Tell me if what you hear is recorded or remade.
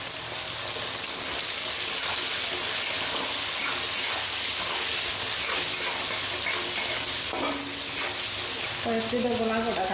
recorded